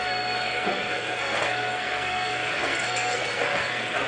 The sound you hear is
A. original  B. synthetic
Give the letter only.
B